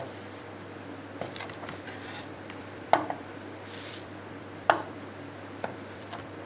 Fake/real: fake